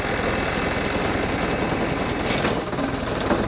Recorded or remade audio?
recorded